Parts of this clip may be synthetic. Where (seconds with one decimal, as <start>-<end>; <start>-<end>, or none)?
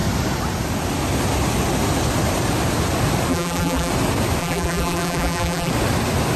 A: 3.3-3.9; 4.4-5.7